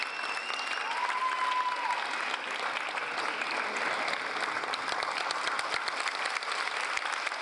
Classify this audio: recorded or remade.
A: recorded